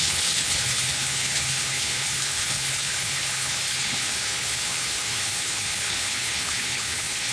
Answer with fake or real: fake